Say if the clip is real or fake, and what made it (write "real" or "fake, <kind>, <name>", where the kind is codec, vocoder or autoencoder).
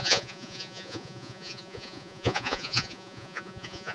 fake, vocoder, Vocos